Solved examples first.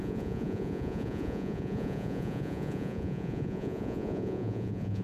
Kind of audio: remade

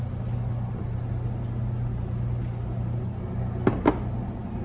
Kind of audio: recorded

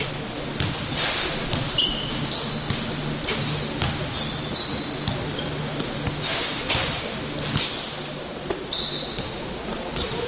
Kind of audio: recorded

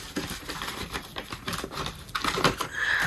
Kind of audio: remade